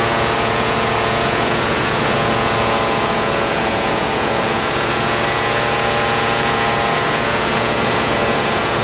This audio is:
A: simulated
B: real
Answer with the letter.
A